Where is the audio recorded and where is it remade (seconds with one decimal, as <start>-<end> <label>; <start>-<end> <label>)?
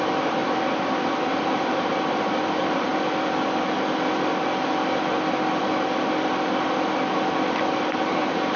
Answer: 0.0-2.9 remade; 2.9-7.7 recorded; 7.7-8.6 remade